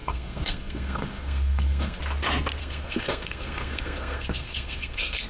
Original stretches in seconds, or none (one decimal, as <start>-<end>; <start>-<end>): 2.0-2.6